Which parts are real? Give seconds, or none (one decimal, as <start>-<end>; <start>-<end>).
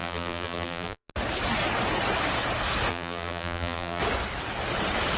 1.1-2.9; 4.0-5.2